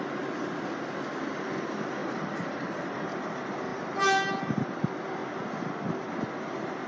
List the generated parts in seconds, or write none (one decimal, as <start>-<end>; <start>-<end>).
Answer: 2.0-3.0; 3.7-4.3

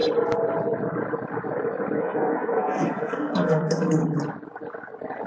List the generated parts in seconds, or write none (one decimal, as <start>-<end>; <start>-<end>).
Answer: 2.0-4.0

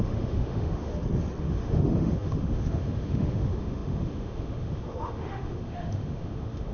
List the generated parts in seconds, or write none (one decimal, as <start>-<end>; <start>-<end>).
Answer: 0.0-0.9; 1.4-6.7